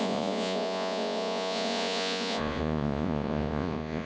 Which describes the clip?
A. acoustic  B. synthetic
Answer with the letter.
B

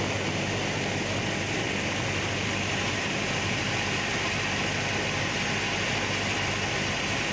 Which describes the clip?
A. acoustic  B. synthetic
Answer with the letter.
A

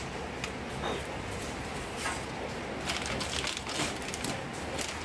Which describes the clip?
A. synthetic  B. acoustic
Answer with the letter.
B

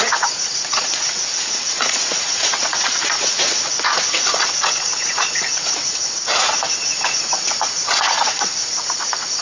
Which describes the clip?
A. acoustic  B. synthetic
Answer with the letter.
B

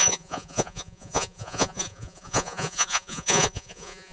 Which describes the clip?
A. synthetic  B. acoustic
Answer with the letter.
A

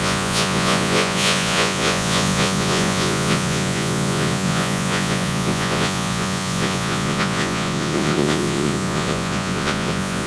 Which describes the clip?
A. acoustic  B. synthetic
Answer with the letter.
B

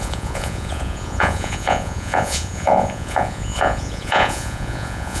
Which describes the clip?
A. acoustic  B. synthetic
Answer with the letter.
B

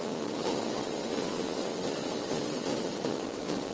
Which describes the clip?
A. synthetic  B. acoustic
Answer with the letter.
A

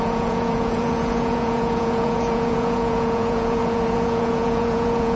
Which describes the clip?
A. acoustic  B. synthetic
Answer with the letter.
B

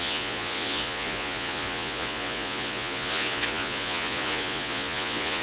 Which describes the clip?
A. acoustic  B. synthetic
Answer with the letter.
B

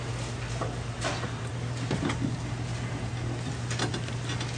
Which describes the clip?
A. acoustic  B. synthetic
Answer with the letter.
A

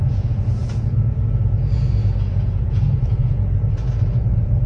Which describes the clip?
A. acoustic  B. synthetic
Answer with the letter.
B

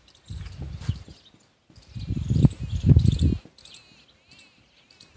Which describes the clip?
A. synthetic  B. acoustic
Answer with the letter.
B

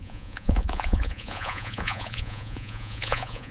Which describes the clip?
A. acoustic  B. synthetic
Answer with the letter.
B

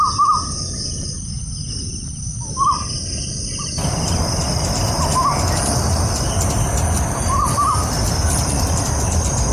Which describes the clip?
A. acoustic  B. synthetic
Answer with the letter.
A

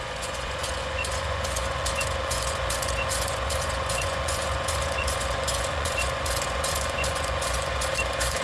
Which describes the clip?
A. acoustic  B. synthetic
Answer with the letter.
B